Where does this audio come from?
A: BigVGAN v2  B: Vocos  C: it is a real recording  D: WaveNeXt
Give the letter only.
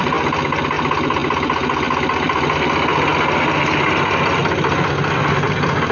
C